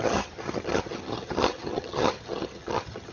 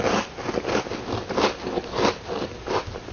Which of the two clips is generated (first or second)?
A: first